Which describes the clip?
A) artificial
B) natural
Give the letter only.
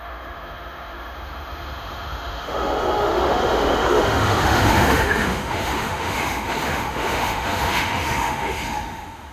A